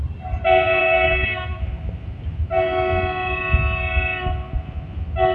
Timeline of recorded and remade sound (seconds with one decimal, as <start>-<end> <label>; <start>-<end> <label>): 0.0-0.8 recorded; 0.8-1.6 remade; 1.6-5.3 recorded